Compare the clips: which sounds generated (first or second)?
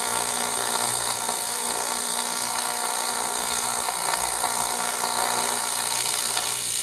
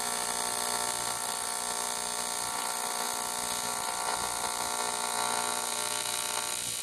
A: first